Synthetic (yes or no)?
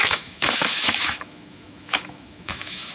yes